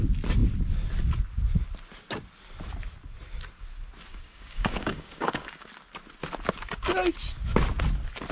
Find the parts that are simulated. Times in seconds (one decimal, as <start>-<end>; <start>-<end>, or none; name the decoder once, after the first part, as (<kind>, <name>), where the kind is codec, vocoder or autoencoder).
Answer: 4.1-5.7 (codec, DAC)